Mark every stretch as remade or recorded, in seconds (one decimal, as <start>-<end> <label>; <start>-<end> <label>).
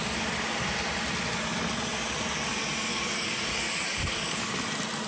0.0-2.9 recorded; 2.9-4.6 remade; 4.6-5.1 recorded